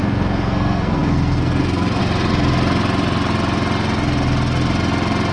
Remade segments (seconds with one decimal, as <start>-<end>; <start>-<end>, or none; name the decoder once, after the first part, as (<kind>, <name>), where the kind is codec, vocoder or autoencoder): 0.0-2.0 (codec, SNAC)